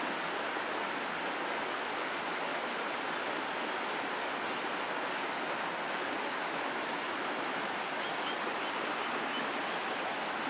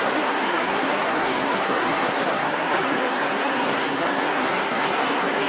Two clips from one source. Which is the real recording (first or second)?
first